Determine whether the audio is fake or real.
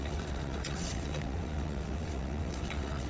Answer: fake